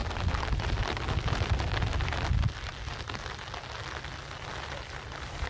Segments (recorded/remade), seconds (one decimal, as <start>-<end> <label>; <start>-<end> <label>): 0.0-5.5 recorded